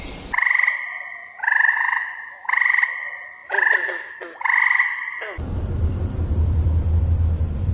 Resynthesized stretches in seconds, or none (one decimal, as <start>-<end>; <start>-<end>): 3.4-7.0